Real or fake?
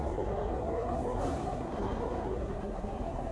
fake